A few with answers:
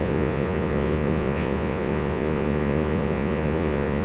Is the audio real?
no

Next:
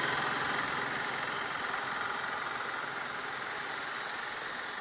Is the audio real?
yes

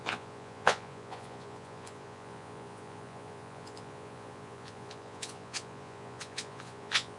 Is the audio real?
no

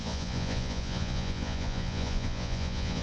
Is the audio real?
no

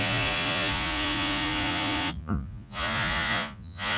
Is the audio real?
no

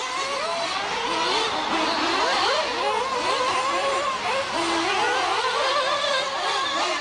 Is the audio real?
yes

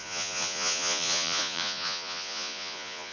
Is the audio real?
no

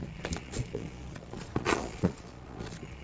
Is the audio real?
no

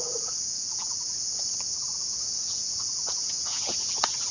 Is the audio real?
no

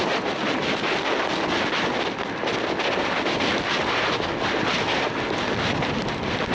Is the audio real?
yes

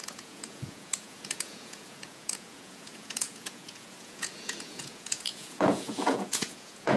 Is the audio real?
no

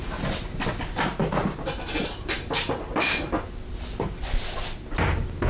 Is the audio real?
yes